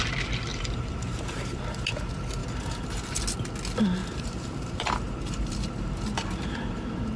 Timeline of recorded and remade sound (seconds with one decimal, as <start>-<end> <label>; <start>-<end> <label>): 0.0-0.5 recorded; 0.5-1.6 remade; 1.6-2.4 recorded; 2.4-3.2 remade; 3.2-4.0 recorded; 4.0-6.8 remade; 6.8-7.2 recorded